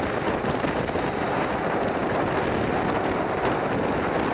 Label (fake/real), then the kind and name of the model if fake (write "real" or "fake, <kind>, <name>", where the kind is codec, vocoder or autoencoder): real